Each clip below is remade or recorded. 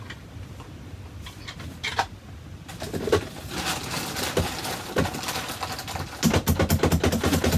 recorded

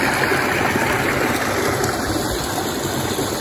recorded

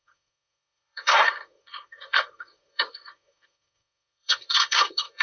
remade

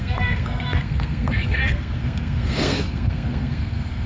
remade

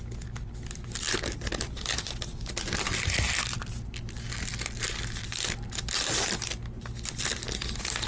recorded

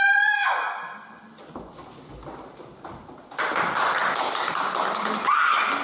remade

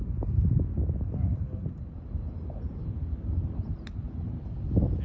recorded